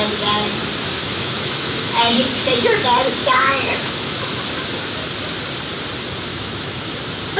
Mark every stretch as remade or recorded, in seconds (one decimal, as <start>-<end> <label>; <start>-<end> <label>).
0.0-1.0 recorded; 1.0-1.9 remade; 1.9-3.2 recorded; 3.2-4.4 remade; 4.4-6.3 recorded; 6.3-6.9 remade; 6.9-7.4 recorded